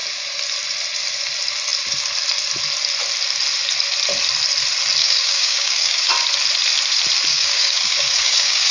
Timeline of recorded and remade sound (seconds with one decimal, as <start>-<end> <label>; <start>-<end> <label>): 0.0-5.0 recorded; 5.0-6.1 remade; 6.1-7.3 recorded; 7.3-8.7 remade